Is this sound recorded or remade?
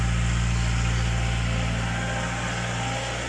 recorded